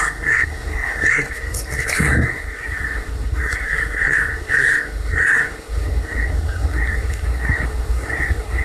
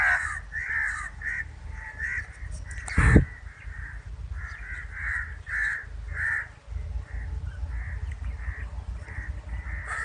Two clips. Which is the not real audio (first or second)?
first